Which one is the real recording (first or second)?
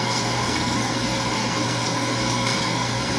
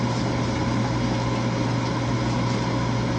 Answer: second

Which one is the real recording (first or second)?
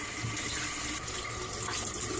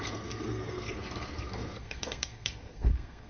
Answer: first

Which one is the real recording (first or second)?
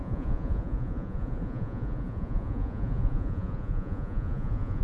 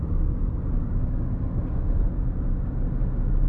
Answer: second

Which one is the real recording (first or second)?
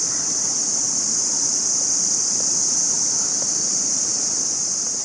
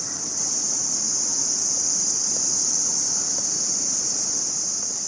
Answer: second